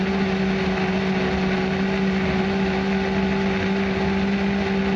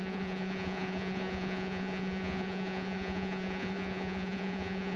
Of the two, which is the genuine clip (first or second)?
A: first